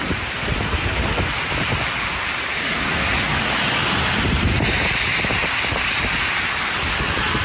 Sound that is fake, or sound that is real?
real